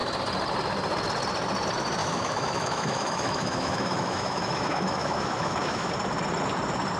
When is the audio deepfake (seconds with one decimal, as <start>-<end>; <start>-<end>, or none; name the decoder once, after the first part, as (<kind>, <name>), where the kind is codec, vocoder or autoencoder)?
2.0-5.9 (autoencoder, DAC-VAE)